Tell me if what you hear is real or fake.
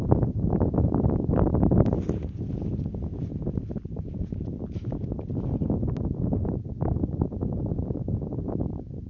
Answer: real